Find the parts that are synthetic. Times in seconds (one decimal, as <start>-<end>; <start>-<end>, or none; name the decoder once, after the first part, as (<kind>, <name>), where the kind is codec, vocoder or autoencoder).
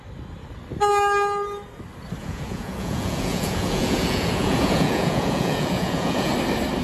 2.2-6.3 (vocoder, Vocos)